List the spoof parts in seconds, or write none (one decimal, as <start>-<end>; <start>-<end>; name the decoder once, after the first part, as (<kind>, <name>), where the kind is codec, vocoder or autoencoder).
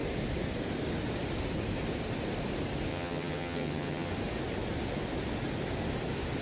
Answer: 2.9-4.1 (vocoder, HiFi-GAN)